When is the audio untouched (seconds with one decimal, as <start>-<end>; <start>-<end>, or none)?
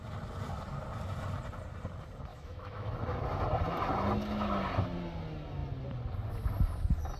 0.0-2.3; 2.9-7.2